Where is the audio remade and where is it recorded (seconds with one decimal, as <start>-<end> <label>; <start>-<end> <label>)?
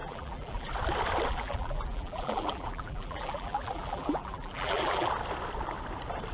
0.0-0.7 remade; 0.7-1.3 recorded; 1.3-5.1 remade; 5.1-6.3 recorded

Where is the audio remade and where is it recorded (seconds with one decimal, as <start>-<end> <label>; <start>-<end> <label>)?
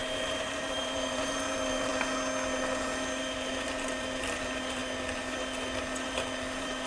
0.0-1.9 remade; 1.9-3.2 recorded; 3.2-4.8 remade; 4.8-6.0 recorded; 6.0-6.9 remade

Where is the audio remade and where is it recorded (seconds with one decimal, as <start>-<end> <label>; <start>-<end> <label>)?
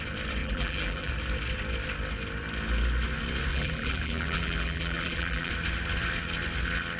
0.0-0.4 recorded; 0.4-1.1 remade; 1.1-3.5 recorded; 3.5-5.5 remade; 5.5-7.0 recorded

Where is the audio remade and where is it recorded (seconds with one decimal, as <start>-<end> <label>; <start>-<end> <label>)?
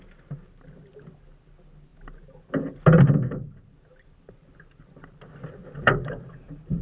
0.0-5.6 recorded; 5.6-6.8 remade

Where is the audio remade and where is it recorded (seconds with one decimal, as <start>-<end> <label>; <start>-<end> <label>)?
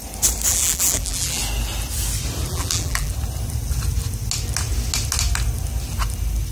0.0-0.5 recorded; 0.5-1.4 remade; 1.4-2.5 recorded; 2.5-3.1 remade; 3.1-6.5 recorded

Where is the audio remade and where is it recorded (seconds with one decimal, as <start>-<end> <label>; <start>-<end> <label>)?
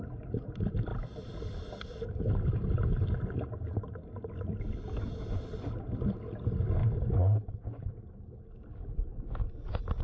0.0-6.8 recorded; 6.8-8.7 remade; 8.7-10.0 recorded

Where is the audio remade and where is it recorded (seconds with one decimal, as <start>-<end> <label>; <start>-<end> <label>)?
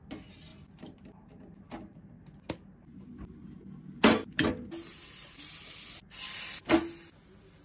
0.0-0.5 recorded; 0.5-1.3 remade; 1.3-2.7 recorded; 2.7-4.0 remade; 4.0-4.9 recorded; 4.9-5.5 remade; 5.5-7.6 recorded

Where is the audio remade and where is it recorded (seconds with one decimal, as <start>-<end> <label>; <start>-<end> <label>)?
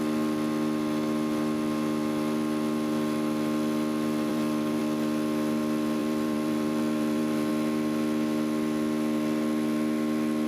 0.0-4.3 recorded; 4.3-4.8 remade; 4.8-6.0 recorded; 6.0-7.5 remade; 7.5-10.5 recorded